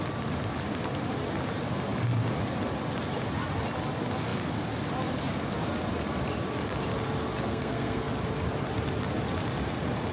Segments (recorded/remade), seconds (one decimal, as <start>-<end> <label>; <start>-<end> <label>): 0.0-7.5 recorded; 7.5-8.1 remade; 8.1-10.1 recorded